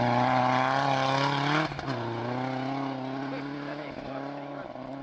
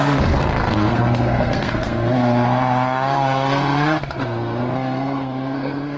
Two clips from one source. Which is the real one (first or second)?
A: first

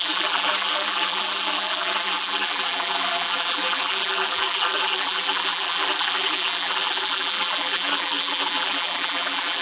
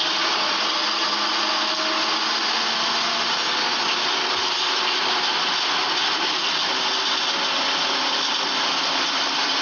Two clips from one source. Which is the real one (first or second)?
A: second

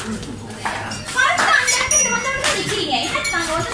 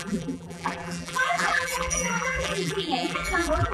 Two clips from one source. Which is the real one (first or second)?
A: first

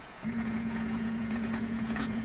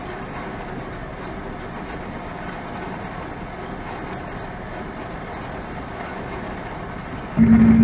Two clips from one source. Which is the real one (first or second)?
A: second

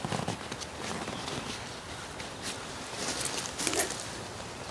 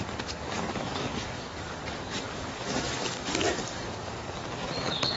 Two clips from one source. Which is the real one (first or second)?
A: first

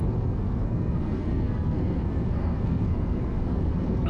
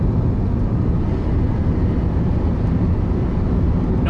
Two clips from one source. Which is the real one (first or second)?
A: second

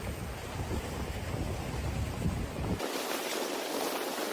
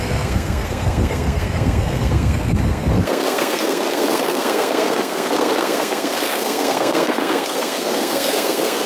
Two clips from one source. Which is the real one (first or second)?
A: first